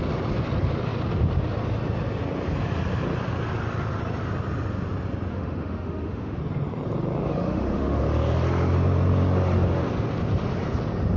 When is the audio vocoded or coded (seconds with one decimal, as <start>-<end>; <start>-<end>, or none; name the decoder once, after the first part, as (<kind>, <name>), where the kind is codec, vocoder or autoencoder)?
5.3-6.4 (autoencoder, DAC-VAE); 7.3-8.0